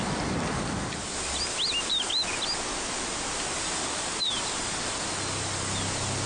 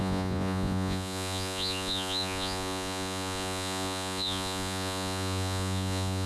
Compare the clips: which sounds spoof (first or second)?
second